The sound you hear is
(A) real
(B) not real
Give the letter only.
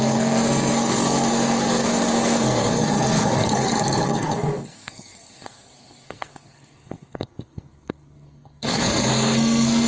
B